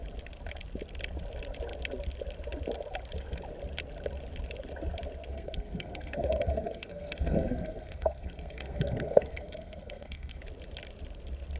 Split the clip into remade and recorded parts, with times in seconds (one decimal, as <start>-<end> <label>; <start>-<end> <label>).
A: 0.0-5.3 recorded; 5.3-10.4 remade; 10.4-11.6 recorded